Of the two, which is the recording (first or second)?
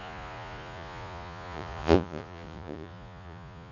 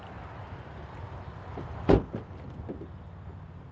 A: second